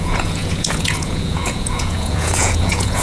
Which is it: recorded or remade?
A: remade